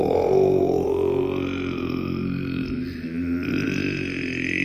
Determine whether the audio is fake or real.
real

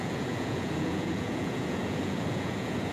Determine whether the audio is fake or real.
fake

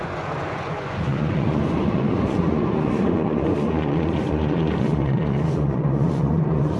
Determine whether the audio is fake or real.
fake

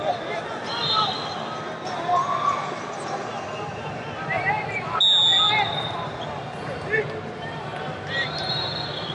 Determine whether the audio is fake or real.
real